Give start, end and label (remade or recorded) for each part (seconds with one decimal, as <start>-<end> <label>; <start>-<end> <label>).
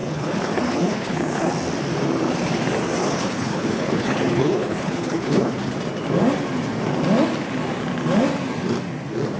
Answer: 0.0-1.5 remade; 1.5-3.0 recorded; 3.0-5.7 remade; 5.7-9.4 recorded